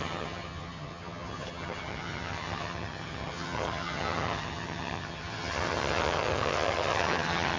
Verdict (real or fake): fake